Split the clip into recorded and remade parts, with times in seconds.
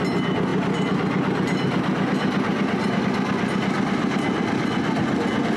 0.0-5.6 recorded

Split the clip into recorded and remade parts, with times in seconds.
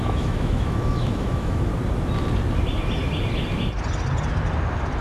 0.0-1.7 remade; 1.7-5.0 recorded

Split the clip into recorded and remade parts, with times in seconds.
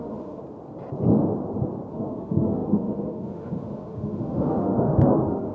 0.0-0.4 remade; 0.4-1.9 recorded; 1.9-5.5 remade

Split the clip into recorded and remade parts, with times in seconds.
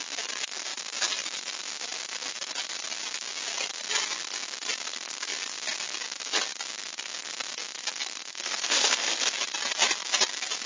0.0-8.3 recorded; 8.3-9.3 remade; 9.3-10.7 recorded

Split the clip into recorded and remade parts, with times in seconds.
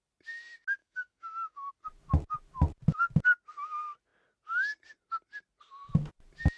0.0-0.8 recorded; 0.8-1.7 remade; 1.7-6.6 recorded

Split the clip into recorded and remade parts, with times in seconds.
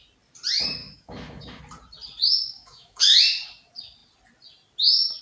0.0-0.8 recorded; 0.8-1.6 remade; 1.6-2.4 recorded; 2.4-3.2 remade; 3.2-5.2 recorded